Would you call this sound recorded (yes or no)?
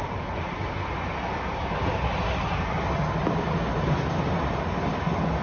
yes